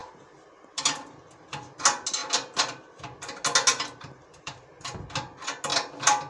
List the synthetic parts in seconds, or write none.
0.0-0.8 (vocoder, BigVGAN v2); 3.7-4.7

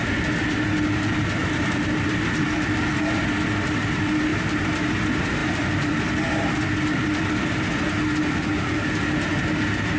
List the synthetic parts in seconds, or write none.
1.4-2.7 (vocoder, BigVGAN v2); 4.3-4.8; 5.4-7.3

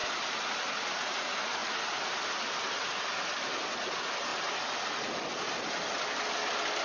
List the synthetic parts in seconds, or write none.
none

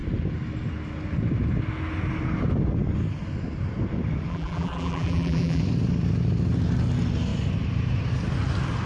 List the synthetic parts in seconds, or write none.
4.3-5.6 (vocoder, BigVGAN v2)

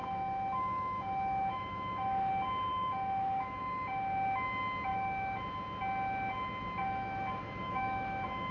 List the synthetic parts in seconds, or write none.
0.0-2.3 (autoencoder, DAC-VAE); 2.7-3.6; 4.9-5.4; 6.8-8.5

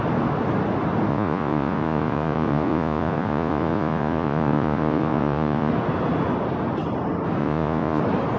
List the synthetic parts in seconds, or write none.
1.1-5.7 (vocoder, Vocos); 7.4-8.0